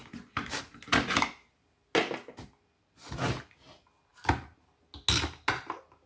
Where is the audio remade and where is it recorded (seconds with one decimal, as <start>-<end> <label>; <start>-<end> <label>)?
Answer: 0.0-6.1 recorded